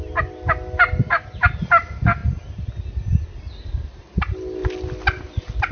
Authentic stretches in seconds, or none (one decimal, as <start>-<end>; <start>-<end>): 0.0-5.7